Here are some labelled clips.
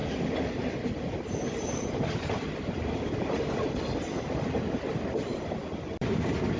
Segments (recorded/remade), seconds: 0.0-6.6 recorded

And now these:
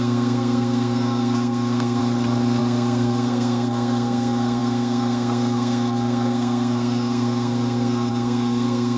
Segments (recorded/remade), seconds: 0.0-2.0 remade; 2.0-2.6 recorded; 2.6-9.0 remade